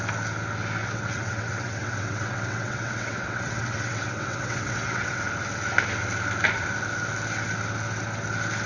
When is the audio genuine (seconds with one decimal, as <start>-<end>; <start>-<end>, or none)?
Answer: 0.0-0.8; 5.2-8.7